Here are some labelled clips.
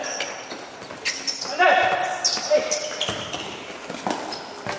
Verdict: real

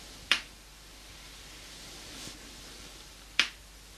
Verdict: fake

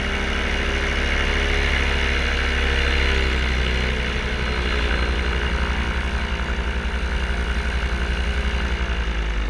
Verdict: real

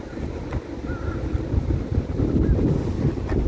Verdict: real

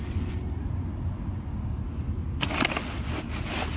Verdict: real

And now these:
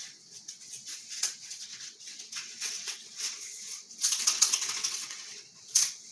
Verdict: fake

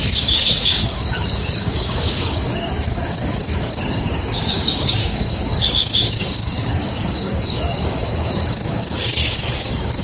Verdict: fake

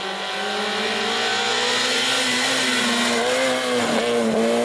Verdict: real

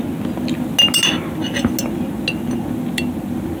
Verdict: real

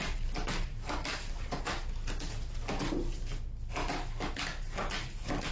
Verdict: real